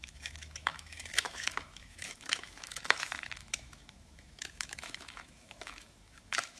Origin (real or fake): fake